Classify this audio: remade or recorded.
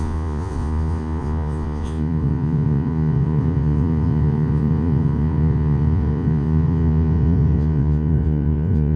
remade